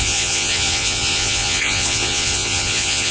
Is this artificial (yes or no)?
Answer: yes